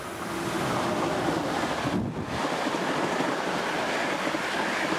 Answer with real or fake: real